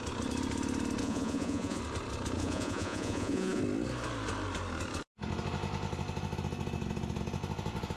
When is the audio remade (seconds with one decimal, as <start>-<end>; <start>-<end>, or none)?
1.0-1.8; 2.4-3.6